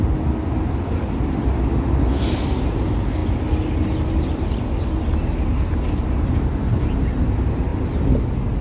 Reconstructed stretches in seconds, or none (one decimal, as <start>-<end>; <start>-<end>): none